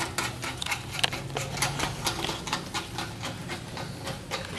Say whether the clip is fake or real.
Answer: real